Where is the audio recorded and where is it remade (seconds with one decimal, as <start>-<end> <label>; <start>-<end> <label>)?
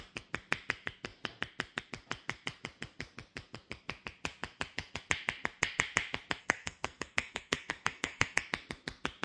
0.0-6.4 recorded; 6.4-8.4 remade; 8.4-9.2 recorded